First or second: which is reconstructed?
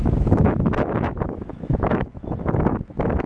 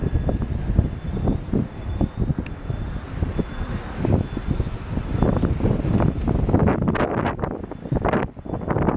first